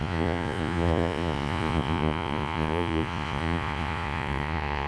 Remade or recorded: remade